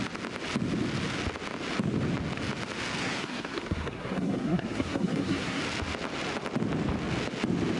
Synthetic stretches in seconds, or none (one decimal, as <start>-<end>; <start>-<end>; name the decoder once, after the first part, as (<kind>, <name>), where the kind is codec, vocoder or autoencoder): 3.0-5.6 (codec, SNAC)